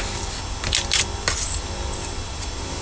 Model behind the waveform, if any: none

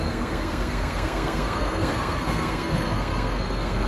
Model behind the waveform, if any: codec, SNAC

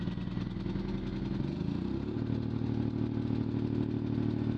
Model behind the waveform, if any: none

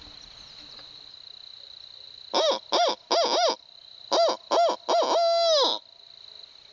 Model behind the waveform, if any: none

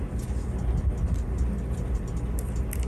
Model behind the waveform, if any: none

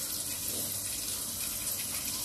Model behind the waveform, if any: none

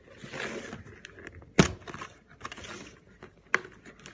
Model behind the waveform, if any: none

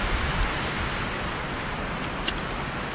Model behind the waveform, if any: none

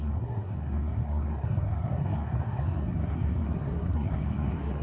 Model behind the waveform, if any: codec, SNAC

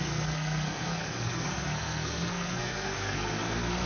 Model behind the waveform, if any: codec, SNAC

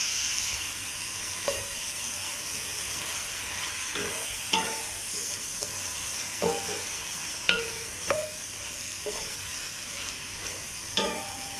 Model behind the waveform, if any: codec, SNAC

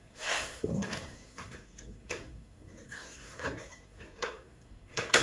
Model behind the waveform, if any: codec, SNAC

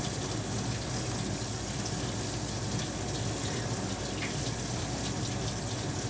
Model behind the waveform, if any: none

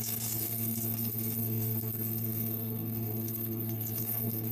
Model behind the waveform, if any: codec, SNAC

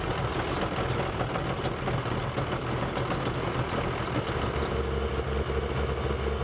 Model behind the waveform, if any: none